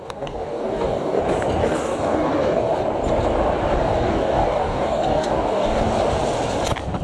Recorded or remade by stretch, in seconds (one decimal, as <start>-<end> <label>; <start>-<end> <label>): 0.0-1.2 remade; 1.2-1.6 recorded; 1.6-2.8 remade; 2.8-3.7 recorded; 3.7-5.8 remade; 5.8-7.0 recorded